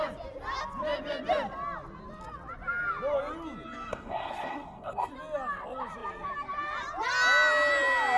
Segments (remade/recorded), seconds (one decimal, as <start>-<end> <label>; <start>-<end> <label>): 0.0-3.9 recorded; 3.9-5.1 remade; 5.1-8.2 recorded